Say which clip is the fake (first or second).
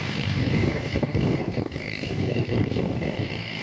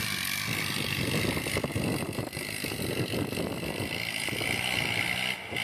first